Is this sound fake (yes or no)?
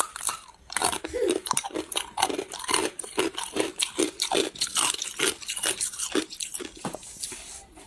yes